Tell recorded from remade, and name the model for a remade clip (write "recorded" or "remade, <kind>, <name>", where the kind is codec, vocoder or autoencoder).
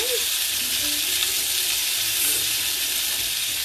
recorded